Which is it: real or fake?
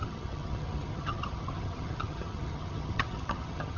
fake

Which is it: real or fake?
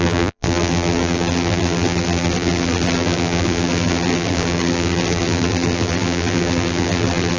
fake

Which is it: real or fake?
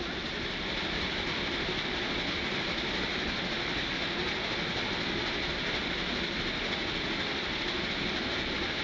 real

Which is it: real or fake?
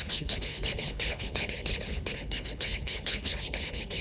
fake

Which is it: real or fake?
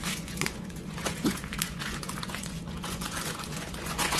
fake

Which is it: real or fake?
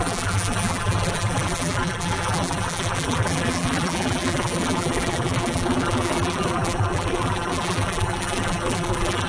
fake